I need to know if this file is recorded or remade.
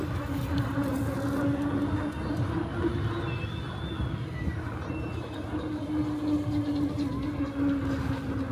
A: recorded